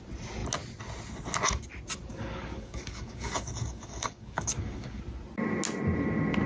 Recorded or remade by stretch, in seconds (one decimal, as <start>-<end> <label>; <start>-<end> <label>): 0.0-2.1 recorded; 2.1-5.0 remade; 5.0-6.5 recorded

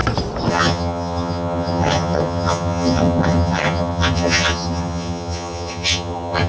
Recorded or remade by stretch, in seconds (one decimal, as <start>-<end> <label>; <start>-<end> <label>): 0.0-0.5 recorded; 0.5-6.5 remade